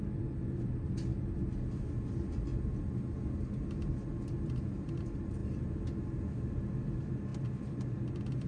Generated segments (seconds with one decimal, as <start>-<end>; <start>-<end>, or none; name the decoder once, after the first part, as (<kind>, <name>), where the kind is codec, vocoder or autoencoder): 0.0-1.1 (vocoder, BigVGAN v2); 4.9-5.4; 6.4-8.5